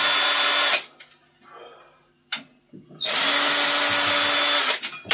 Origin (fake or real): real